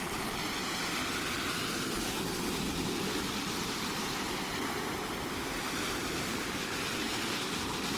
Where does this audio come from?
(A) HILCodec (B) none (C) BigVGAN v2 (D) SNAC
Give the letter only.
B